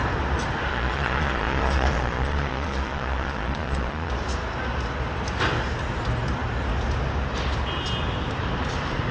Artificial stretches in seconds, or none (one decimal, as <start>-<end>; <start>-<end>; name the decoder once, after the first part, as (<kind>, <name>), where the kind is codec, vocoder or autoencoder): 0.7-4.1 (vocoder, Vocos)

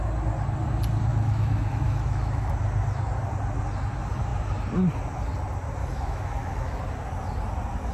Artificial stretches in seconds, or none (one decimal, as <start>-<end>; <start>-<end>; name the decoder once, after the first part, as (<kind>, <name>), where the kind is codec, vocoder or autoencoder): 1.1-2.5 (autoencoder, DAC-VAE); 5.8-6.8

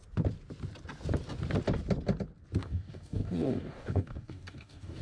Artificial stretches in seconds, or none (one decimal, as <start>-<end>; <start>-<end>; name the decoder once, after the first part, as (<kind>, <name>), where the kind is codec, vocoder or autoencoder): 2.6-5.0 (codec, DAC)

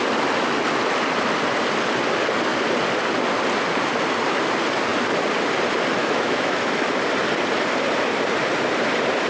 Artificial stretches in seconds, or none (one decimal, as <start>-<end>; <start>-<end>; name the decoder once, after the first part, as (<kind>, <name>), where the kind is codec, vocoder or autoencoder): 6.0-6.8 (autoencoder, DAC-VAE)